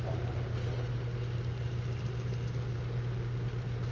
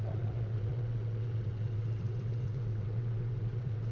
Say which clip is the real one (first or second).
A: first